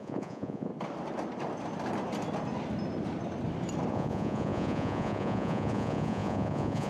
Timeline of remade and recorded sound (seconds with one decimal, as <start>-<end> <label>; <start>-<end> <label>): 0.0-0.7 remade; 0.7-3.9 recorded; 3.9-6.9 remade